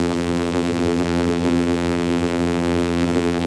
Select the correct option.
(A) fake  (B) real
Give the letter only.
A